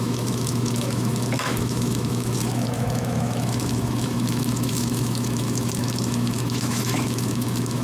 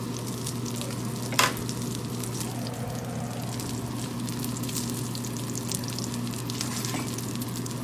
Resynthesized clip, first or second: first